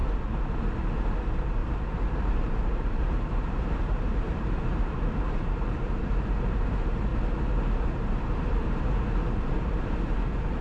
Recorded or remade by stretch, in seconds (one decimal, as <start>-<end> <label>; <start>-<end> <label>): 0.0-0.8 recorded; 0.8-7.1 remade; 7.1-7.8 recorded; 7.8-10.6 remade